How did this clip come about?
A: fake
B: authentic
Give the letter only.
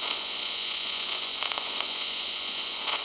A